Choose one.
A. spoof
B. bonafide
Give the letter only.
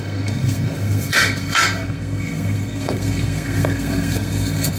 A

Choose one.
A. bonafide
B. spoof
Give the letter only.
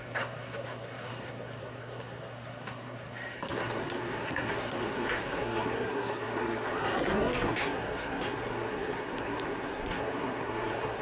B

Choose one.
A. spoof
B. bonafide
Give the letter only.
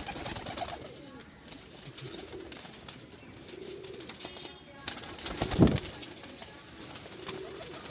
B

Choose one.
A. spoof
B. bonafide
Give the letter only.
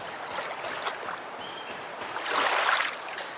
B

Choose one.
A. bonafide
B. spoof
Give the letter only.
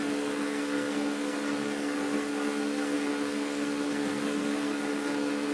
B